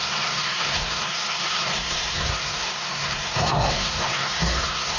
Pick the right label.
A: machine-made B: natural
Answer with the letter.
A